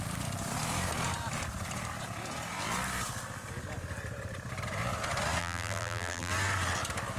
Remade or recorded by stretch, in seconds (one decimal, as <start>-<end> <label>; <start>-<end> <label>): 0.0-5.4 recorded; 5.4-6.3 remade; 6.3-7.2 recorded